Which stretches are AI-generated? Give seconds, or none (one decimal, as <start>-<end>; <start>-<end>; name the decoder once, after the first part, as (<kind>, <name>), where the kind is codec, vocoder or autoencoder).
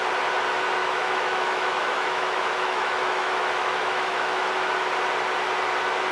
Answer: 0.8-4.5 (autoencoder, DAC-VAE)